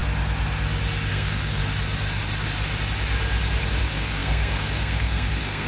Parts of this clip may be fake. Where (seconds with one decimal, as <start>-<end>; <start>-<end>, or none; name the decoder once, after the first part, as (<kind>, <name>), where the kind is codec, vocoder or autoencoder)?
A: 1.1-1.6 (codec, SNAC); 3.8-5.7